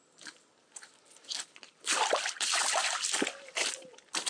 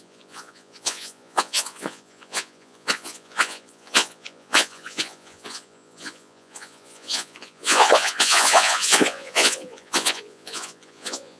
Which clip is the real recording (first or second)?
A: first